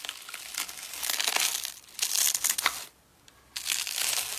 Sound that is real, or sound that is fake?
real